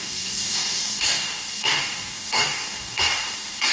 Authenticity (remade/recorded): remade